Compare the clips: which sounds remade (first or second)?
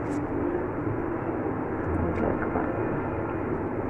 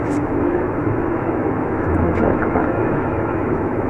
second